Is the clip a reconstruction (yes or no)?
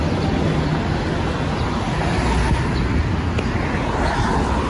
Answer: no